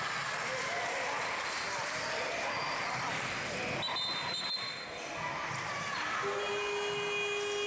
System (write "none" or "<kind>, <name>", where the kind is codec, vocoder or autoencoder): none